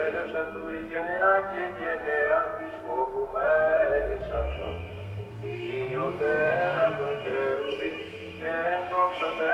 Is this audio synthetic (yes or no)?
yes